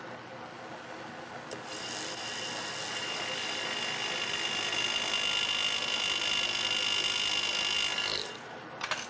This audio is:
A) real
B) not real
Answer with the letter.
A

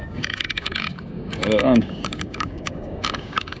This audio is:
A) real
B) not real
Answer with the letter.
B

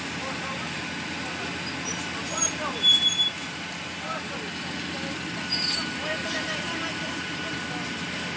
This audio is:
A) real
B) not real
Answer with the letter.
A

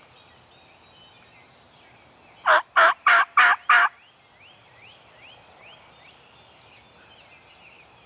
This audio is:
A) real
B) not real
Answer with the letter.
A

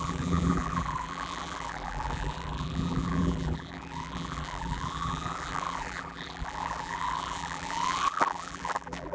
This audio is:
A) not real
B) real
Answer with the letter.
A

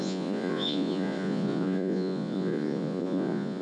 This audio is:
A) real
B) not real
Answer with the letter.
B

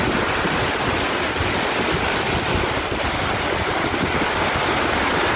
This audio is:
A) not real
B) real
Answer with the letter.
B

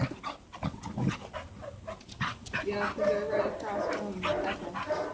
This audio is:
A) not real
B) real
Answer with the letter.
B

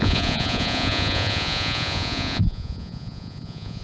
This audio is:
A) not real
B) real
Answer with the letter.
A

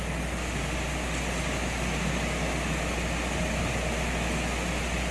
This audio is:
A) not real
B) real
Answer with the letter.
B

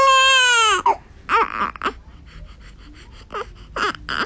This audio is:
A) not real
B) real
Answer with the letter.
B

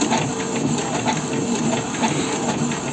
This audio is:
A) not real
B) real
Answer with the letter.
B